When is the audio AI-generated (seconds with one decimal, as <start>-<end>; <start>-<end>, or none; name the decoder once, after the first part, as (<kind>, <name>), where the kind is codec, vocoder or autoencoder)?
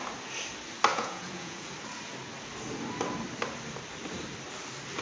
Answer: 0.9-1.7 (vocoder, Vocos)